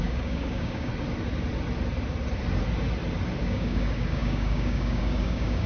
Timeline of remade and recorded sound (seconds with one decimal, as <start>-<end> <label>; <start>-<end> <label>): 0.0-0.9 remade; 0.9-3.4 recorded; 3.4-5.7 remade